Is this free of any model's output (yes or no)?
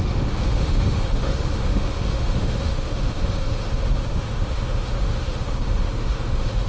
no